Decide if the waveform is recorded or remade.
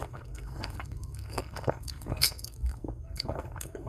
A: remade